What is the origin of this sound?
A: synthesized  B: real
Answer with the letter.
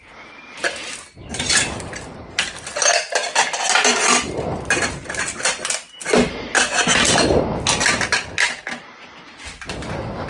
B